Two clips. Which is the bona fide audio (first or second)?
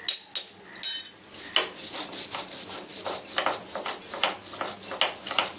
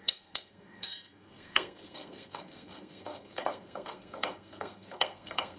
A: first